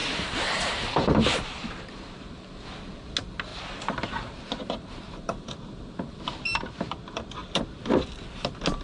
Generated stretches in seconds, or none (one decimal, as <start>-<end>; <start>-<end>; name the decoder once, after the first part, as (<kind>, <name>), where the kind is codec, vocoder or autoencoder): 0.0-1.8 (vocoder, BigVGAN v2); 3.5-7.6